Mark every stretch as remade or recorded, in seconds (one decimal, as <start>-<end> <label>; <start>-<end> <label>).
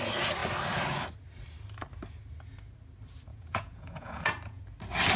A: 0.0-3.3 recorded; 3.3-4.6 remade; 4.6-5.2 recorded